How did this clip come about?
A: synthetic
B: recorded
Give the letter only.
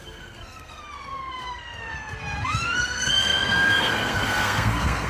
A